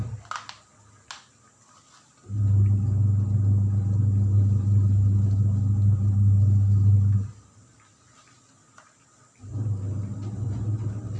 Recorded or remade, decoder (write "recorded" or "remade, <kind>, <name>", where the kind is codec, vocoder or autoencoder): recorded